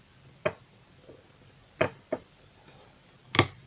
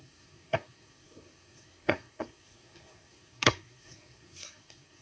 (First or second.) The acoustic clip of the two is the first